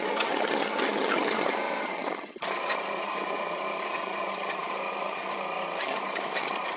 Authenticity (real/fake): fake